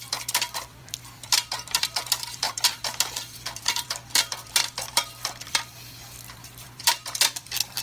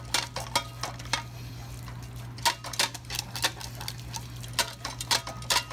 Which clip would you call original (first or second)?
second